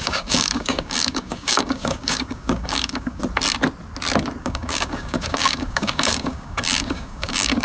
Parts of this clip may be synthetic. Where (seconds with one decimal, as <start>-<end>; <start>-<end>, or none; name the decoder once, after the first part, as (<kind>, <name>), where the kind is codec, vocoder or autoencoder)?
0.0-3.2 (codec, DAC); 4.4-7.6